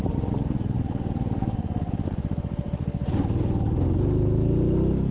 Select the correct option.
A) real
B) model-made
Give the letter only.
A